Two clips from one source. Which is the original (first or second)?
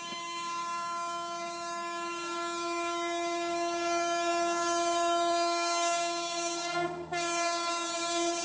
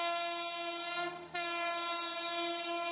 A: second